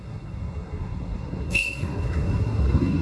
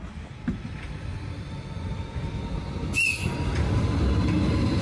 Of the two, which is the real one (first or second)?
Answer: second